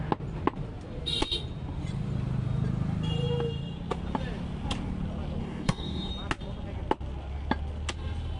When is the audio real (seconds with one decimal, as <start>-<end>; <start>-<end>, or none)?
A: 0.0-5.4; 6.1-8.4